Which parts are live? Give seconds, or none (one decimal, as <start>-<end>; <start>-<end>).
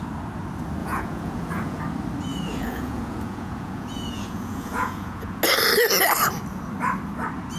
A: 0.0-0.8; 1.8-2.3; 5.4-7.6